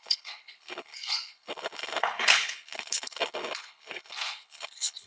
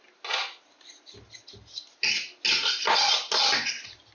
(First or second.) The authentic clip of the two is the second